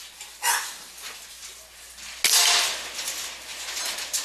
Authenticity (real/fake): real